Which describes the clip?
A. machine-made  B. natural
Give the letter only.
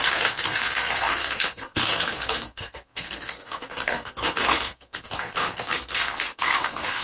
A